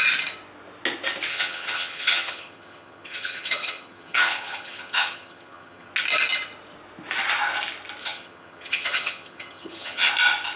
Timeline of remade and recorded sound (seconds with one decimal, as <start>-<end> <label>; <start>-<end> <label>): 0.0-1.3 recorded; 1.3-5.9 remade; 5.9-8.0 recorded; 8.0-10.1 remade; 10.1-10.6 recorded